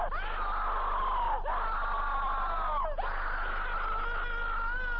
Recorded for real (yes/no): yes